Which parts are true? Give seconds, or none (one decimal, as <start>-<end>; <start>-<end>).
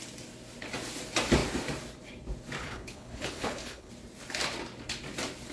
0.0-2.6; 3.9-5.5